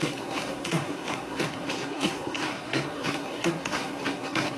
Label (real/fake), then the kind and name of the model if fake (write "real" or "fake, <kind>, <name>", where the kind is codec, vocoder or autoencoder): fake, codec, SNAC